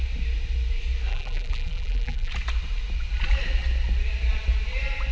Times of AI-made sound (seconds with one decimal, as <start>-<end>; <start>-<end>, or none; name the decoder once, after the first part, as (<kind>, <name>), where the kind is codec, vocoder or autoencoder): 1.1-2.3 (vocoder, BigVGAN v2)